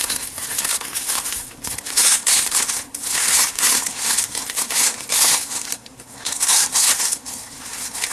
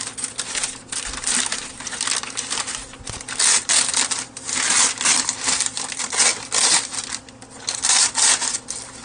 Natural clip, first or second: second